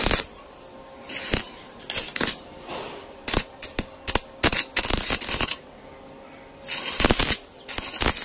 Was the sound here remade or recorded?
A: recorded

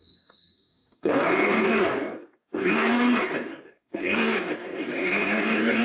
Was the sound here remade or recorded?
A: remade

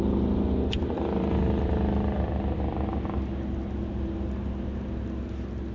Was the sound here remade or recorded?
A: recorded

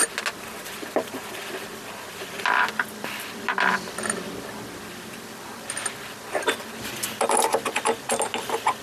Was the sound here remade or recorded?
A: recorded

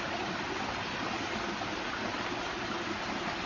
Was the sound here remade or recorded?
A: recorded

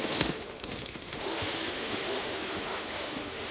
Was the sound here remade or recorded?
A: remade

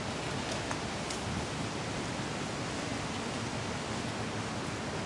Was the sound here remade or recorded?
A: recorded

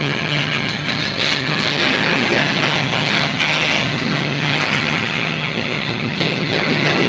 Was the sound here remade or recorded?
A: remade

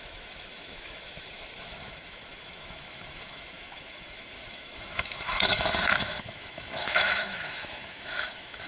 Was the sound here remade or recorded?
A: remade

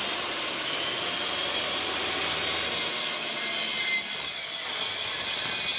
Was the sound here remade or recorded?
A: recorded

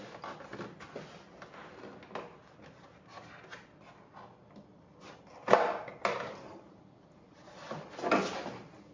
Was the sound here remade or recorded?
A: recorded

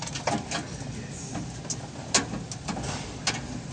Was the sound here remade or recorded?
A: recorded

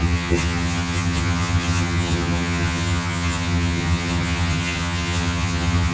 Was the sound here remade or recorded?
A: remade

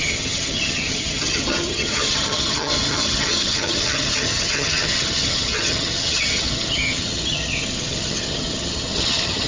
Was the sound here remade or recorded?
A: remade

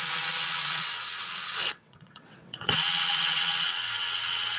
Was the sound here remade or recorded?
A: remade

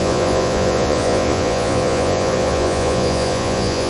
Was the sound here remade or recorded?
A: remade